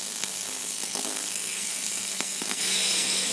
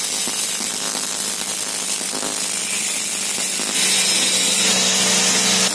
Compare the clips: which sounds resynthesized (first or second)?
first